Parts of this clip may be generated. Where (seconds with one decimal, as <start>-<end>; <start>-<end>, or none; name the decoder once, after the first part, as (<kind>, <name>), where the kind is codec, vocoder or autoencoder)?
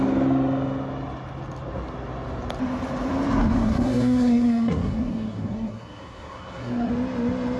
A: 3.4-6.9 (codec, SNAC)